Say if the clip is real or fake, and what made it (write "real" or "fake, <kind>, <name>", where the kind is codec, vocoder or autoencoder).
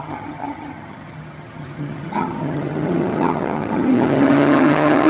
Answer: fake, vocoder, HiFi-GAN